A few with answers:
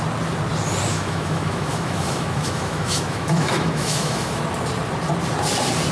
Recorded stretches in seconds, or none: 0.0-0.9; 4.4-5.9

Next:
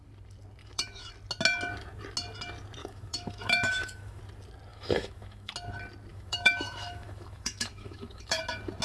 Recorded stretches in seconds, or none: 0.0-0.6; 1.1-2.8; 4.2-4.7; 5.5-6.1; 8.4-8.8